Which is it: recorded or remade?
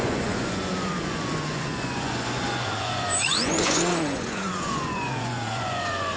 remade